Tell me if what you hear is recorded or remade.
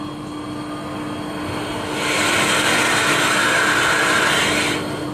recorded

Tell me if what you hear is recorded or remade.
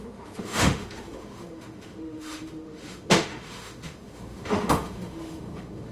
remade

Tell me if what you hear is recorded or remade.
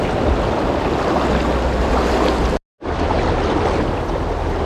recorded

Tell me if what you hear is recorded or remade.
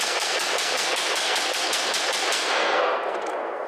remade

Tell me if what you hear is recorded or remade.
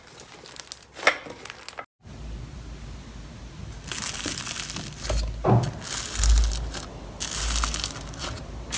recorded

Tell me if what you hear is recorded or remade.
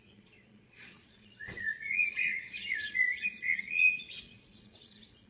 remade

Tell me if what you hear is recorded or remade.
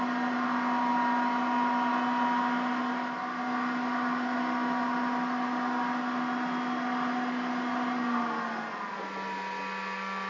recorded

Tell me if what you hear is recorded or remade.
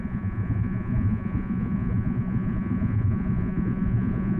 remade